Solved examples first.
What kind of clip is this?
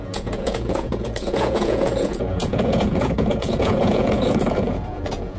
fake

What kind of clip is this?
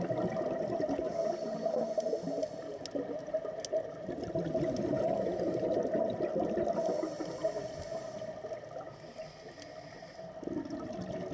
real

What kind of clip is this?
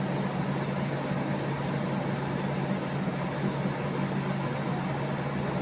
real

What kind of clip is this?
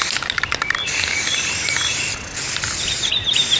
real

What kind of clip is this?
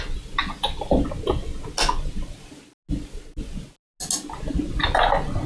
real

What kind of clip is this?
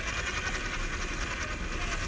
real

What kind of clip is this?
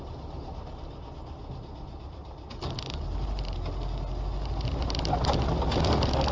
real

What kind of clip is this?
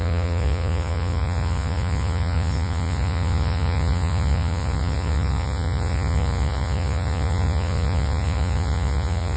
fake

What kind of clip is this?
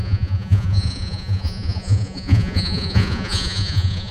fake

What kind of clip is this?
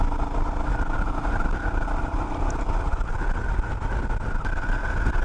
real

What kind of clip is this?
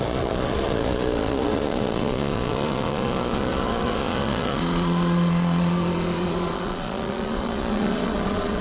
fake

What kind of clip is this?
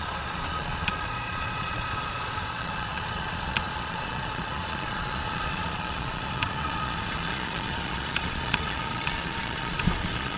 fake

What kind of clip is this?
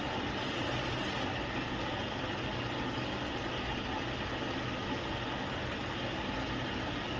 real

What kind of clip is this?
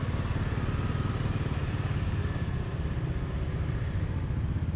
real